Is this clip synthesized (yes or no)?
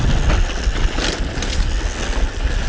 no